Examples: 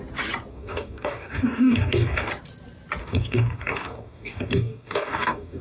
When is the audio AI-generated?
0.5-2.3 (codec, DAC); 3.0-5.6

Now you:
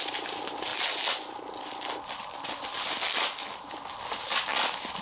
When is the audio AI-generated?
none

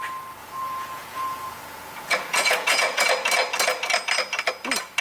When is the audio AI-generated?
0.4-3.0 (vocoder, Vocos)

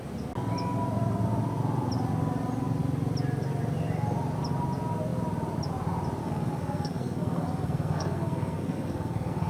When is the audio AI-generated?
6.2-9.5 (codec, SNAC)

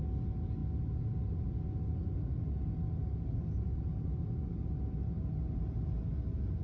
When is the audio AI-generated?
3.0-4.7 (vocoder, BigVGAN v2)

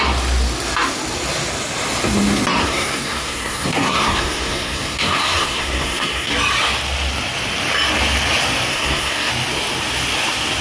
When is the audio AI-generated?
2.6-6.3 (codec, SNAC); 8.7-9.3